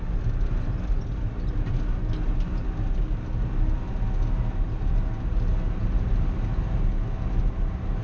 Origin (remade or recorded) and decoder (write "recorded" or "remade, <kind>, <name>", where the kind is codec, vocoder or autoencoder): recorded